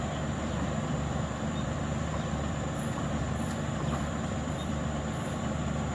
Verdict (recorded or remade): remade